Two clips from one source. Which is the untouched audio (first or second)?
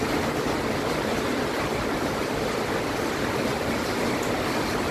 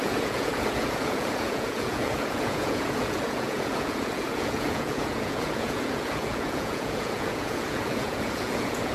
first